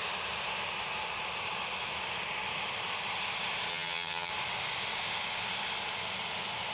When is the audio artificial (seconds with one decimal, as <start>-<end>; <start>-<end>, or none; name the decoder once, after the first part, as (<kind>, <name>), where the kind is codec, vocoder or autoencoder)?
3.7-4.3 (vocoder, HiFi-GAN)